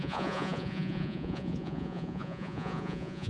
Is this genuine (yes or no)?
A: no